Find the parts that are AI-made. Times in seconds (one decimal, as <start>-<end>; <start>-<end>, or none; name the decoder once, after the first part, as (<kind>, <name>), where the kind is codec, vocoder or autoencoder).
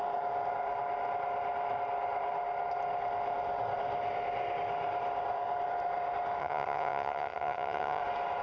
6.4-8.0 (vocoder, HiFi-GAN)